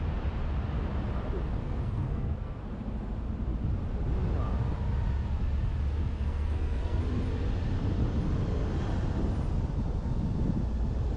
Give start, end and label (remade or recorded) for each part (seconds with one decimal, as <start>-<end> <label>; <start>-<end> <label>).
0.0-1.6 recorded; 1.6-2.6 remade; 2.6-6.0 recorded; 6.0-7.0 remade; 7.0-11.2 recorded